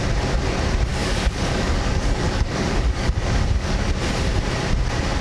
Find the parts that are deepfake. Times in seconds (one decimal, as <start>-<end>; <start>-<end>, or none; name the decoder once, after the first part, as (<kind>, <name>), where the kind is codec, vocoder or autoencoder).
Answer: 0.9-3.9 (codec, DAC)